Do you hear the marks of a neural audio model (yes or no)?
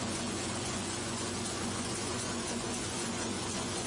yes